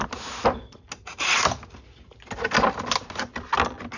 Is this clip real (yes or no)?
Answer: yes